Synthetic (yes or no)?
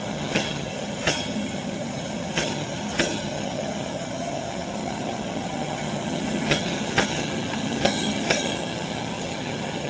yes